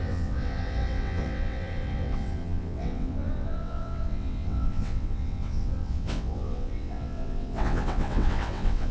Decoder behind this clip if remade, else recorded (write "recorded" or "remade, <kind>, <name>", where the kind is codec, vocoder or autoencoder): remade, vocoder, WaveNeXt